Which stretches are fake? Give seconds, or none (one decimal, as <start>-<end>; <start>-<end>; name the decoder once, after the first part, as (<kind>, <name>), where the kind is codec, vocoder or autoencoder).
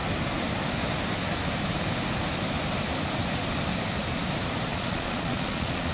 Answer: 4.7-5.9 (vocoder, Vocos)